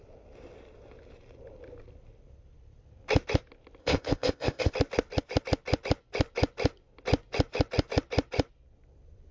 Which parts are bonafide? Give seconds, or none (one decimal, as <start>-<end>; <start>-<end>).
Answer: 0.0-3.8; 4.7-9.3